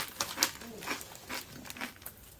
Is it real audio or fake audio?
real